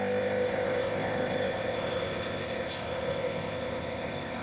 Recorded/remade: remade